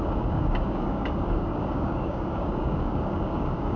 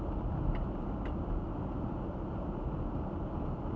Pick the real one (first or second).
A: second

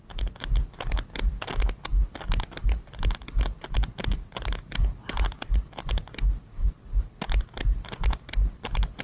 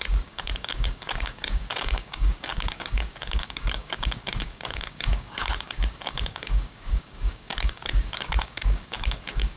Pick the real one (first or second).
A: first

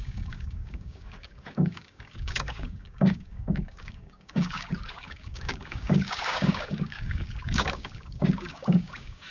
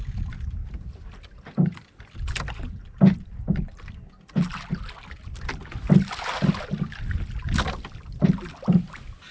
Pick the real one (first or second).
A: second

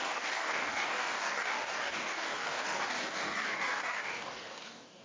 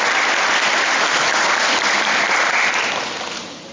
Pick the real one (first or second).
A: second